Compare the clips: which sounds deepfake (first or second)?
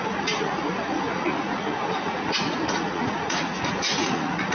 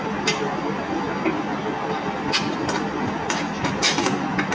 first